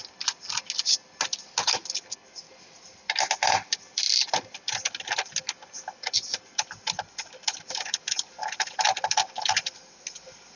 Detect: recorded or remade recorded